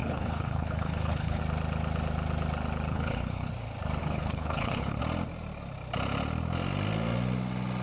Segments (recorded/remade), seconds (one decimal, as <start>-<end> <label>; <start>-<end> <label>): 0.0-1.4 remade; 1.4-2.9 recorded; 2.9-3.5 remade; 3.5-4.0 recorded; 4.0-5.0 remade; 5.0-7.8 recorded